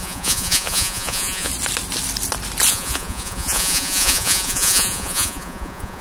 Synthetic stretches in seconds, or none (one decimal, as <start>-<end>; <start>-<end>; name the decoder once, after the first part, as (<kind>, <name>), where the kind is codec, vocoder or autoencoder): 0.0-1.5 (vocoder, Vocos); 2.7-6.0